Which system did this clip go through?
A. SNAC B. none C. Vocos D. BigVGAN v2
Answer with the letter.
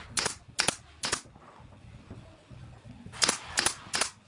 B